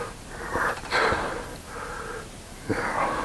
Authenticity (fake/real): fake